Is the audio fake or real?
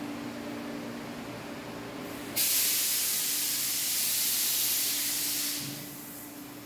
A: real